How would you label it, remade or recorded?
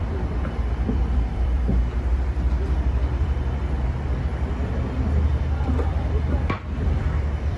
remade